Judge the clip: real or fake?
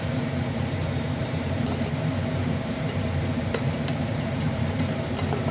fake